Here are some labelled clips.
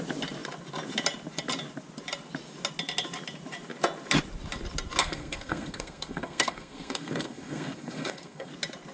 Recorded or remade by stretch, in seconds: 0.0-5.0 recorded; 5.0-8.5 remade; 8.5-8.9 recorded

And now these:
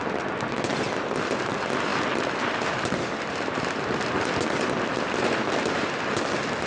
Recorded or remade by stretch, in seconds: 0.0-6.7 recorded

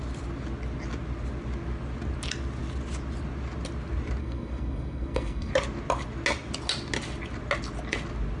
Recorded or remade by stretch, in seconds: 0.0-4.2 recorded; 4.2-5.5 remade; 5.5-8.4 recorded

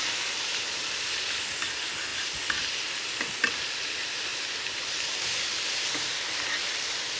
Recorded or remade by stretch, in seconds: 0.0-7.2 recorded

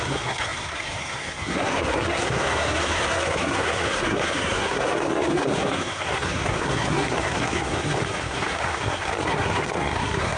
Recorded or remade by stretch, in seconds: 0.0-10.4 remade